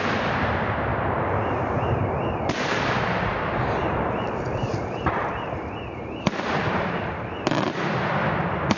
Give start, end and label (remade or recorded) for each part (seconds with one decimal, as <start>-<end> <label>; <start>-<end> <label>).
0.0-8.8 remade